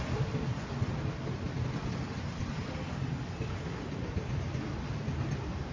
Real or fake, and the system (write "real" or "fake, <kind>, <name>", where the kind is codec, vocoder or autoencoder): real